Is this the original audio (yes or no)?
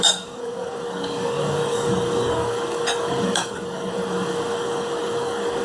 no